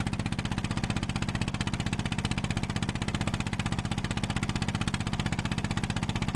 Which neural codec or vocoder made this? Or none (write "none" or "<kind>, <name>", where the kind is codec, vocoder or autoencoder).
none